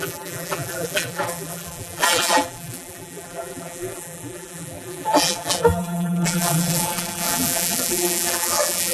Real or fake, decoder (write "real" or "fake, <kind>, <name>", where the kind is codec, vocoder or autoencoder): fake, vocoder, BigVGAN v2